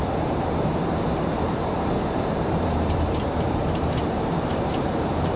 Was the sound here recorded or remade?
remade